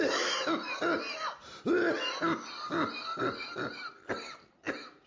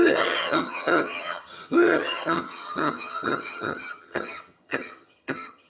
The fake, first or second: second